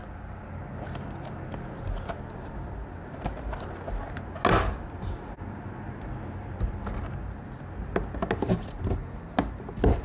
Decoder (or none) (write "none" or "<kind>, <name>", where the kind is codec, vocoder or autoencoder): none